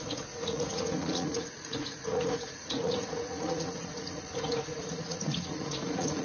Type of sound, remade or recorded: remade